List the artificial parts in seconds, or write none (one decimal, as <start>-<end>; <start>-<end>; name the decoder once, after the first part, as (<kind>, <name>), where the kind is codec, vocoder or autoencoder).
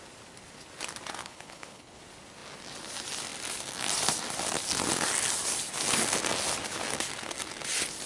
1.2-2.0 (codec, HILCodec)